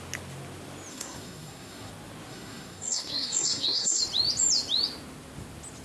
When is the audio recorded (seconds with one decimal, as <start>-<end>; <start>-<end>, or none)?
0.0-0.9; 1.9-2.3; 4.0-5.8